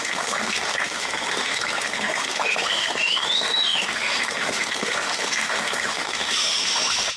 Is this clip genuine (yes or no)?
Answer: no